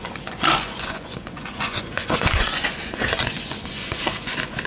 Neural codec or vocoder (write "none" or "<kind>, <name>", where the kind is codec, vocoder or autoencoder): vocoder, Vocos